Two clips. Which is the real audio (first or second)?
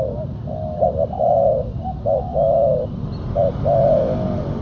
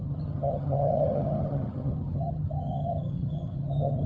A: first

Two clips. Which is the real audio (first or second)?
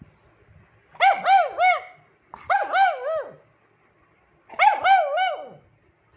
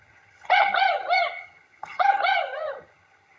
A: first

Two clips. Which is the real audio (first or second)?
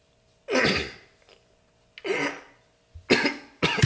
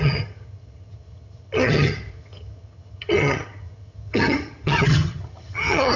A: first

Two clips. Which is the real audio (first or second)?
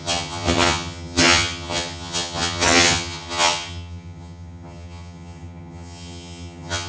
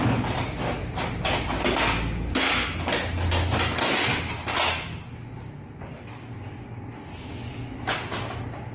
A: second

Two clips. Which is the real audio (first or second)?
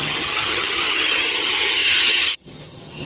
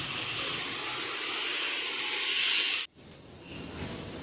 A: second